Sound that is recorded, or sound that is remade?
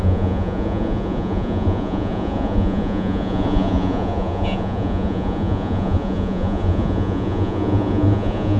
remade